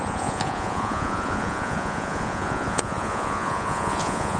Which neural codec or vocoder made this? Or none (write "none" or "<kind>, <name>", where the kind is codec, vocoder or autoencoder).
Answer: vocoder, Vocos